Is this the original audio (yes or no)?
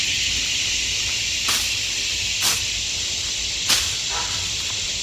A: yes